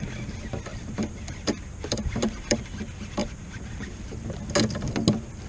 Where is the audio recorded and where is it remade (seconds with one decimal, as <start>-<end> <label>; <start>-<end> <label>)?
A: 0.0-0.7 recorded; 0.7-2.6 remade; 2.6-3.2 recorded; 3.2-4.4 remade; 4.4-5.5 recorded